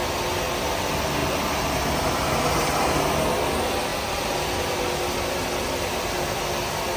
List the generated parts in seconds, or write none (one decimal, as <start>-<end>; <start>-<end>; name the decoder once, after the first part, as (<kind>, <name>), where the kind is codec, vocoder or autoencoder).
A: 1.2-1.8 (vocoder, BigVGAN v2); 3.9-4.6